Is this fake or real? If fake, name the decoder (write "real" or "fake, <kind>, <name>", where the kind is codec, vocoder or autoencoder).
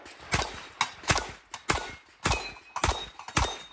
real